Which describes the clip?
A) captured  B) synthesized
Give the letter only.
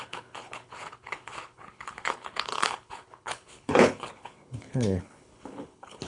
B